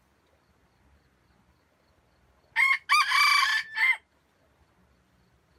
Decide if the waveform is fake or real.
real